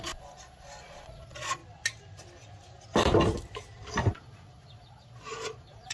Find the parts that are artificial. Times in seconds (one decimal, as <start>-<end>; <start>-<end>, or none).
0.0-1.6; 4.1-5.9